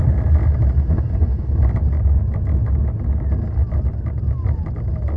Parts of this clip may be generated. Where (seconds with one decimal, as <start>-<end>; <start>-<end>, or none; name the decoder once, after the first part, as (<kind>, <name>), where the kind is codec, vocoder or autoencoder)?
none